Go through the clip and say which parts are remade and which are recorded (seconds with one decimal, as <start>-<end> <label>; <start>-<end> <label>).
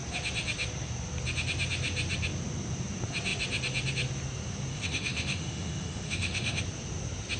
0.0-4.7 recorded; 4.7-6.6 remade; 6.6-7.4 recorded